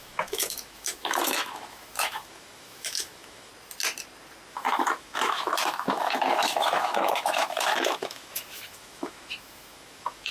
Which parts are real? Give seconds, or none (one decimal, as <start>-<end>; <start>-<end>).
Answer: 3.5-4.5